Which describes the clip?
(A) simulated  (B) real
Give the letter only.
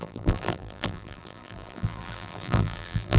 A